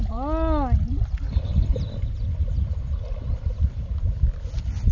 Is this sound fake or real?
real